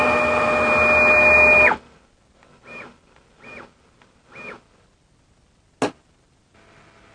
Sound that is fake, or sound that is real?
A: real